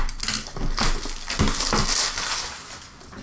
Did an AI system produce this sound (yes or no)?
no